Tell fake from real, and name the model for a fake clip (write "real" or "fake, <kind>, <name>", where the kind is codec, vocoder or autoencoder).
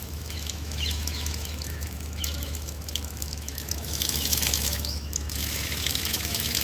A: fake, autoencoder, DAC-VAE